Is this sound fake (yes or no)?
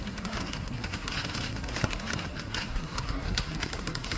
yes